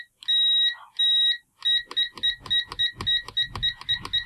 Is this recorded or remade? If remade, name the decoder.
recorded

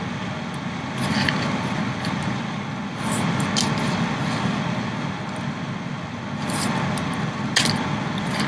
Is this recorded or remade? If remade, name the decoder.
recorded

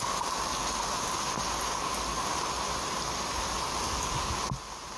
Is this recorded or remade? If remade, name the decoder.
recorded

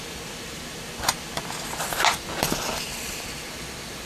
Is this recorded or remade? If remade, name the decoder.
recorded